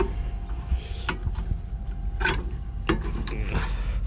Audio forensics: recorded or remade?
recorded